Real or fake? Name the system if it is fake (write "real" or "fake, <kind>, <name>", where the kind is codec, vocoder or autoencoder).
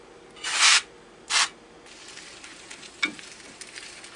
real